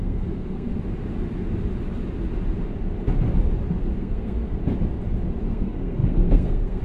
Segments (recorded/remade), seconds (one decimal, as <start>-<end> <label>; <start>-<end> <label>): 0.0-0.7 remade; 0.7-4.0 recorded; 4.0-4.6 remade; 4.6-5.4 recorded; 5.4-6.8 remade